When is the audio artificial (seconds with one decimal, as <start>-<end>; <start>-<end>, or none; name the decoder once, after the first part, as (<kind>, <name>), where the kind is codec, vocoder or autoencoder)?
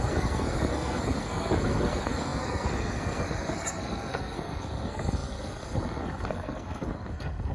0.0-7.5 (codec, SNAC)